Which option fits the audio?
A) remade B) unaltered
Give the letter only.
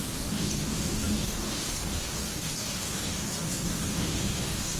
A